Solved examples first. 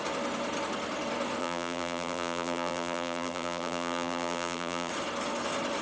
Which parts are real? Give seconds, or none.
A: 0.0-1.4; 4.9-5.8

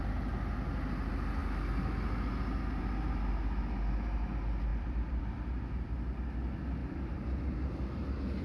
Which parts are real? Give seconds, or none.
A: 0.0-4.7; 5.2-6.8; 7.4-8.4